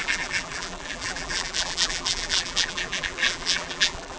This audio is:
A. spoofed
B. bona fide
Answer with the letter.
A